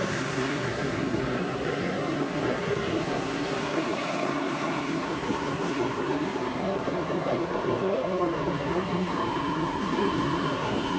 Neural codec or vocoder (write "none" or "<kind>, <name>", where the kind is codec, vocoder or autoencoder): codec, SNAC